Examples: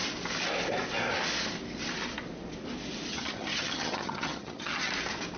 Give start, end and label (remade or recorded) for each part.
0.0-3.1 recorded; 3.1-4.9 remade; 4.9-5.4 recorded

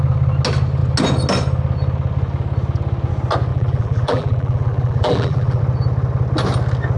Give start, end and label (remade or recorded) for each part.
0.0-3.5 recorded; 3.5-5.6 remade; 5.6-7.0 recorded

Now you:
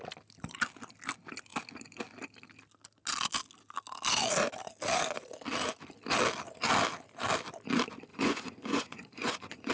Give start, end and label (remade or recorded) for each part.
0.0-8.1 recorded; 8.1-9.7 remade

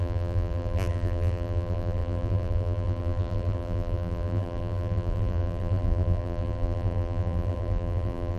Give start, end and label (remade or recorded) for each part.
0.0-8.4 remade

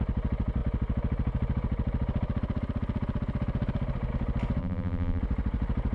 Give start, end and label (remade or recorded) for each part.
0.0-4.6 recorded; 4.6-5.2 remade; 5.2-5.9 recorded

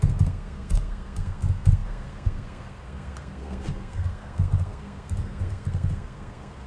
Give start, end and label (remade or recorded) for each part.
0.0-6.7 remade

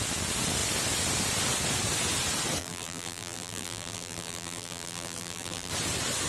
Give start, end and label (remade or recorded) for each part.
0.0-2.6 recorded; 2.6-5.7 remade; 5.7-6.3 recorded

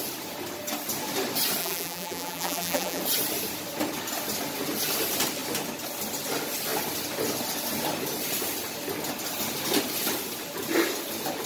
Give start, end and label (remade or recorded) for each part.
0.0-1.6 recorded; 1.6-3.0 remade; 3.0-11.5 recorded